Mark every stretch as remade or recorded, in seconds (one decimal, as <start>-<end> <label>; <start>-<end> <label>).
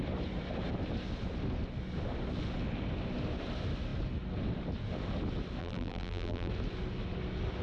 0.0-5.6 recorded; 5.6-6.5 remade; 6.5-7.6 recorded